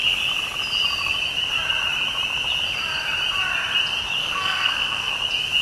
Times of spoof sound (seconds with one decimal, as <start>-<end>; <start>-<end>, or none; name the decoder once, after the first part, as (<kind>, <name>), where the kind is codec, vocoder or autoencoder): 4.2-5.1 (codec, SNAC)